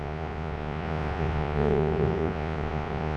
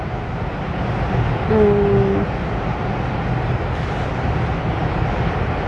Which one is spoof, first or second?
first